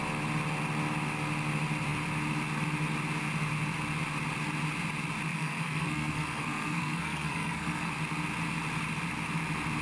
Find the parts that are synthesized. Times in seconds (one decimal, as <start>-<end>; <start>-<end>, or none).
5.3-7.9